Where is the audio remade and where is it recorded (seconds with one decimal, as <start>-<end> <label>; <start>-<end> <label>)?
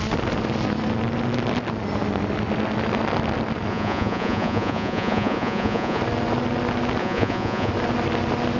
0.0-3.7 recorded; 3.7-6.0 remade; 6.0-7.0 recorded; 7.0-7.7 remade; 7.7-8.6 recorded